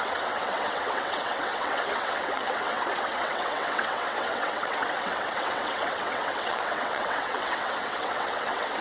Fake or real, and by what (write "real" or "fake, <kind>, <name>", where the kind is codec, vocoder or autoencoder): fake, vocoder, WaveNeXt